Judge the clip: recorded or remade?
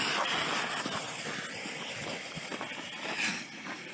recorded